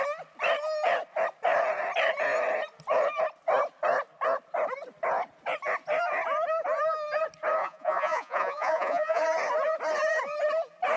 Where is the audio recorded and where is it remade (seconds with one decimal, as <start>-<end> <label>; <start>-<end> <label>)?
0.0-7.6 recorded; 7.6-9.2 remade; 9.2-11.0 recorded